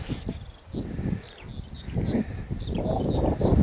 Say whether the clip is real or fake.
real